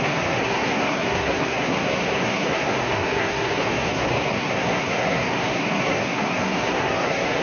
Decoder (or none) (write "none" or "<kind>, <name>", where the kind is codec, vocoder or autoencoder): codec, SNAC